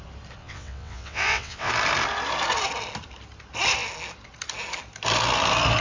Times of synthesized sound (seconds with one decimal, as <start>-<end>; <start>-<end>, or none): 0.4-1.7